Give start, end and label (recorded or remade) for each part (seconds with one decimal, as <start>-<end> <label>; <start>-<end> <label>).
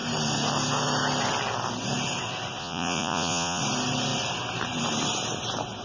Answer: 0.0-2.6 recorded; 2.6-3.6 remade; 3.6-5.8 recorded